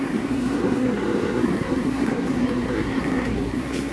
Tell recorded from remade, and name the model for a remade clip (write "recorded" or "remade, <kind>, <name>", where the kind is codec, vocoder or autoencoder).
remade, codec, SNAC